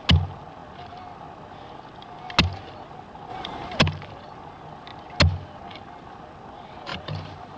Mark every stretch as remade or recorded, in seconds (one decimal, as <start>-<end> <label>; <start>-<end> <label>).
0.0-3.3 recorded; 3.3-3.8 remade; 3.8-6.9 recorded; 6.9-7.6 remade